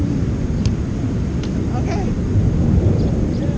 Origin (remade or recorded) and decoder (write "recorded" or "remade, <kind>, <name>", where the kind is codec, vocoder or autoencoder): recorded